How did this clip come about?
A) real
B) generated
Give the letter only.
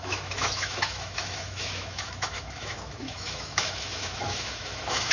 B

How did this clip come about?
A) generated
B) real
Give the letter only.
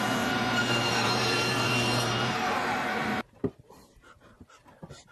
A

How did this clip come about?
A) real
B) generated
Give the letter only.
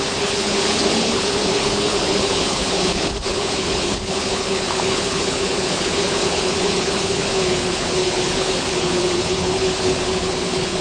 B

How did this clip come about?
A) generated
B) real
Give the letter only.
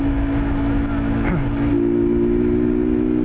B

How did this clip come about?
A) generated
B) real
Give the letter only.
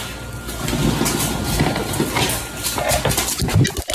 B